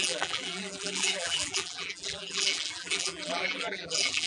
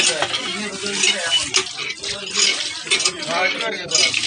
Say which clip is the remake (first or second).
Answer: first